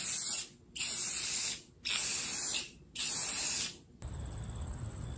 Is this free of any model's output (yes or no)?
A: yes